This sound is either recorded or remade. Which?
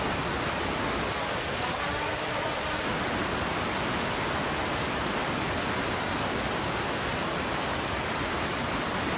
recorded